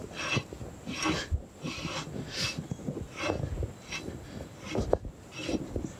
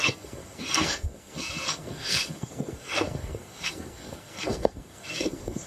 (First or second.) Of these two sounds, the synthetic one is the second